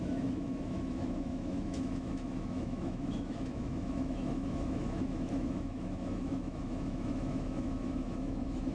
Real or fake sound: fake